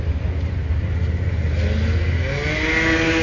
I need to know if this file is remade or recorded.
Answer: recorded